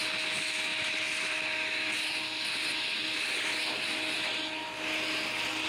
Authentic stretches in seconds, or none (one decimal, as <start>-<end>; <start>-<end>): 0.0-0.7; 1.4-5.7